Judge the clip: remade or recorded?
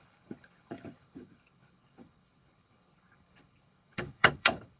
remade